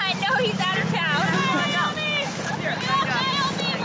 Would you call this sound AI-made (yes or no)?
no